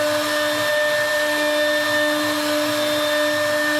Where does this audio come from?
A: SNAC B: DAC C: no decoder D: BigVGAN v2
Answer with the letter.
C